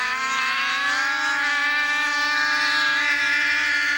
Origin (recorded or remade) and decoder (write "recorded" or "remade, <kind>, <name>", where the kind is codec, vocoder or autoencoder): remade, autoencoder, DAC-VAE